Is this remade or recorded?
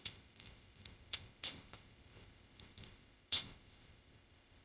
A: remade